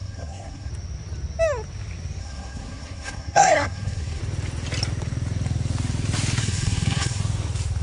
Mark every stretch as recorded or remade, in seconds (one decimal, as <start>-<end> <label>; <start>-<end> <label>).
0.0-0.7 remade; 0.7-2.2 recorded; 2.2-4.2 remade; 4.2-6.4 recorded; 6.4-7.2 remade; 7.2-7.8 recorded